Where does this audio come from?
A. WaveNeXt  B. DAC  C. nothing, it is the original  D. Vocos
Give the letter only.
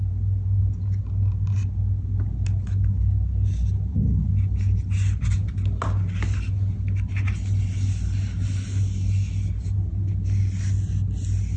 C